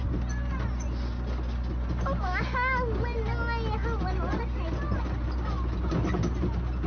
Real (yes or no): yes